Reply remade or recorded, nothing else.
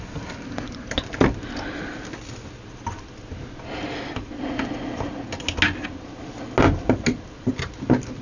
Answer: recorded